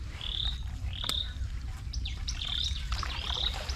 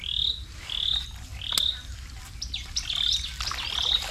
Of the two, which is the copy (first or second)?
first